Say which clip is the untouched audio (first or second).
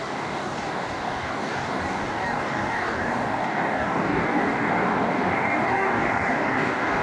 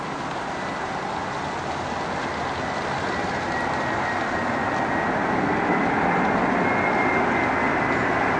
second